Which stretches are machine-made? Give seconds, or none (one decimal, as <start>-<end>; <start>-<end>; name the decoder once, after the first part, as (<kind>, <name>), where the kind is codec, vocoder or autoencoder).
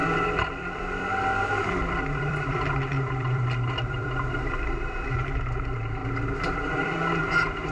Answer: 0.0-4.5 (vocoder, BigVGAN v2); 6.0-7.3